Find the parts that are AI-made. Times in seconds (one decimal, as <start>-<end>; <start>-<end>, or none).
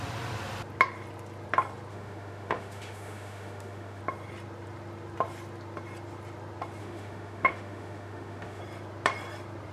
1.9-4.0; 6.8-8.6